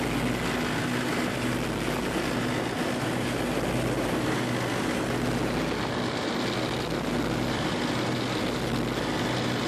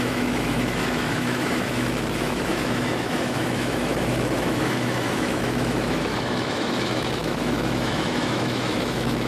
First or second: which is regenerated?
second